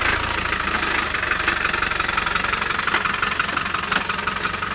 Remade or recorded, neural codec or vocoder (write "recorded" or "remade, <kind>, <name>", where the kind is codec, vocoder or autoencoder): recorded